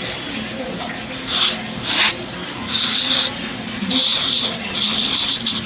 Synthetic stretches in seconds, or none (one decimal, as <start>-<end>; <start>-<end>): 4.1-5.7